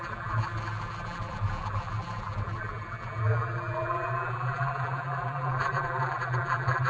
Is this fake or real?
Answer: fake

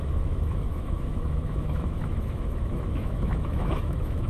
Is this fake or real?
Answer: fake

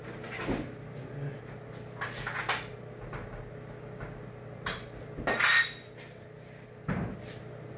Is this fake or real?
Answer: real